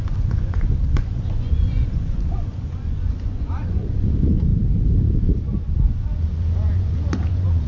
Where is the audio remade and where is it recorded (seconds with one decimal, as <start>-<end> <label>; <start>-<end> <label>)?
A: 0.0-4.5 remade; 4.5-5.7 recorded; 5.7-7.7 remade